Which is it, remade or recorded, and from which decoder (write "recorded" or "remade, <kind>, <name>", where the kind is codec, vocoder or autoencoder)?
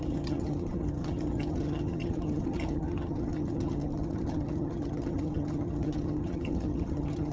remade, vocoder, HiFi-GAN